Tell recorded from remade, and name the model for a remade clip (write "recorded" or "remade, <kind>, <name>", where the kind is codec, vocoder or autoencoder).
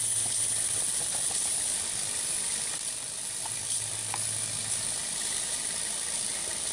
recorded